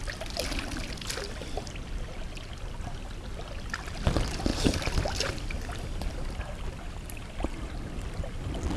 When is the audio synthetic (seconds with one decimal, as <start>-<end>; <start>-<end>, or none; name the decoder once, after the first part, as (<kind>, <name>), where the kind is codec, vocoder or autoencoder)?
none